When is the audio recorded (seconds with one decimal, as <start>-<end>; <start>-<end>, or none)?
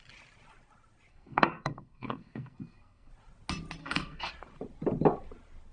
0.0-1.1; 3.1-3.8; 4.3-5.7